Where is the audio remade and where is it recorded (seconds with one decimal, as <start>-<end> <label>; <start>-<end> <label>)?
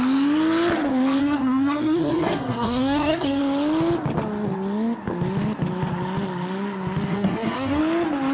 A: 0.0-1.2 recorded; 1.2-3.4 remade; 3.4-7.1 recorded; 7.1-7.8 remade; 7.8-8.3 recorded